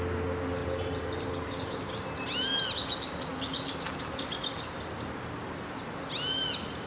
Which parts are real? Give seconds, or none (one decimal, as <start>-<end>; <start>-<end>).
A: 0.0-0.6; 1.9-6.9